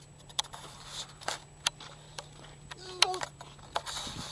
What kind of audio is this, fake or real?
real